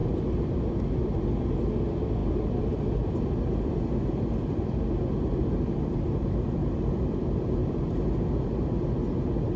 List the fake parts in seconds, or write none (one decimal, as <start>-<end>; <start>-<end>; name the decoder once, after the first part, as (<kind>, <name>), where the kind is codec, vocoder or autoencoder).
none